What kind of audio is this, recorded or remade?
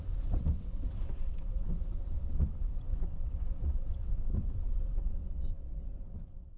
remade